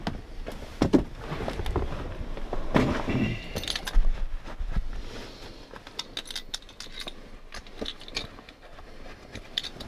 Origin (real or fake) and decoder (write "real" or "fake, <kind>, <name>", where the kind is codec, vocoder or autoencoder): real